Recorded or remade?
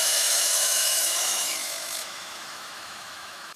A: remade